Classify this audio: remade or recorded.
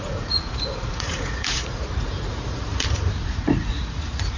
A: remade